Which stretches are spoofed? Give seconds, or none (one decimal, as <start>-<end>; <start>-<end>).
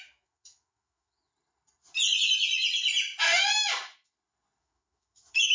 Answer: 0.0-1.3; 4.6-5.5